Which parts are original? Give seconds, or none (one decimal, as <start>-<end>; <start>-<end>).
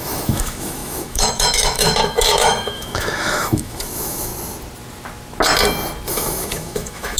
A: 4.3-6.1